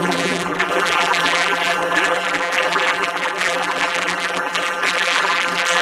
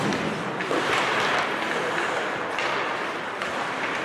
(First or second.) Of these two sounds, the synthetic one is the first